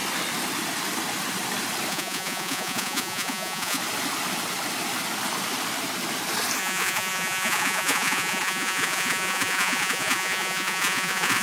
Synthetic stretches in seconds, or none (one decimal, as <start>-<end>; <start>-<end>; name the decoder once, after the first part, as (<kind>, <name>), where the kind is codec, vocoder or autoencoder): 1.9-3.8 (vocoder, Vocos); 6.6-11.4